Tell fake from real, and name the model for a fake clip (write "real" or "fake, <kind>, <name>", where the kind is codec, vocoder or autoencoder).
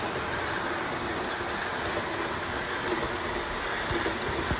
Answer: real